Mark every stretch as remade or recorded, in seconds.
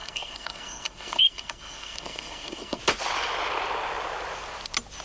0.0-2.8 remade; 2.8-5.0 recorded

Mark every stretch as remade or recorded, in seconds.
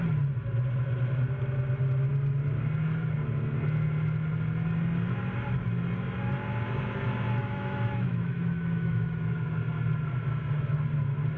0.0-7.4 recorded; 7.4-9.3 remade; 9.3-11.4 recorded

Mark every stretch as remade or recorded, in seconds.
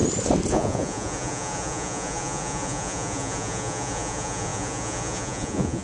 0.0-0.5 recorded; 0.5-5.8 remade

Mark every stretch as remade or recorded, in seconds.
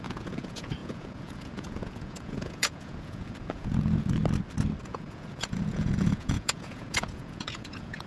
0.0-4.2 remade; 4.2-4.8 recorded; 4.8-8.1 remade